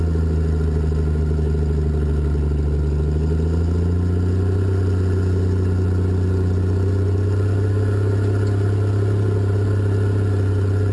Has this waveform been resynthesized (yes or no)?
no